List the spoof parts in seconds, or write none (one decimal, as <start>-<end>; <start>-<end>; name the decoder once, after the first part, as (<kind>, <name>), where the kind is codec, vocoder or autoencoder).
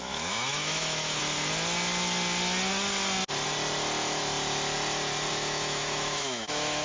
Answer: 0.0-1.2 (autoencoder, DAC-VAE); 5.3-6.8